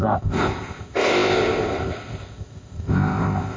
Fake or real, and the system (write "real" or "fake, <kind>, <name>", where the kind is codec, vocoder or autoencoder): fake, codec, ZipCodec